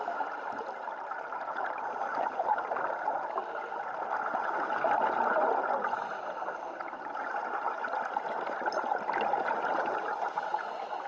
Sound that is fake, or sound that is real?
real